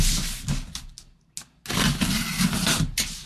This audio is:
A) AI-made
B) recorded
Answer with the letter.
B